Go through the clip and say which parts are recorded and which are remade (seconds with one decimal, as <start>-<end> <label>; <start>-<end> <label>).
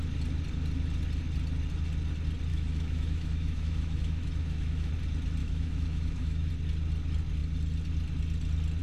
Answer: 0.0-2.5 recorded; 2.5-4.9 remade; 4.9-5.4 recorded; 5.4-6.5 remade; 6.5-8.8 recorded